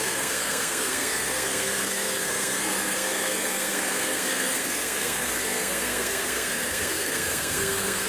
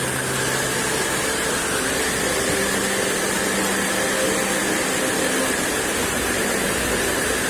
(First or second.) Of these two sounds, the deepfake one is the first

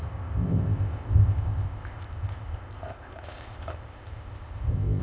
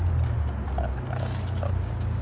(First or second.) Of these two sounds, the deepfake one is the first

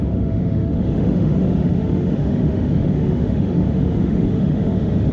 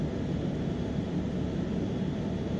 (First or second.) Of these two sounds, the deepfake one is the first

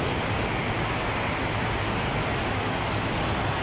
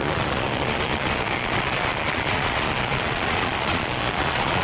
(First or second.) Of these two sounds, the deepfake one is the second